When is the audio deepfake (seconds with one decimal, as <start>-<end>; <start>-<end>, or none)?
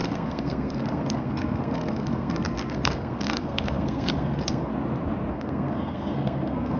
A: 0.0-4.7; 5.3-6.8